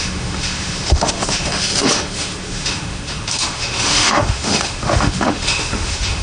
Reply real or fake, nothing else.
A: fake